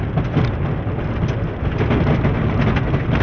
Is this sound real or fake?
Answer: real